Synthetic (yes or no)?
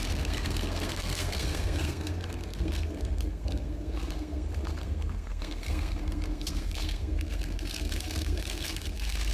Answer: yes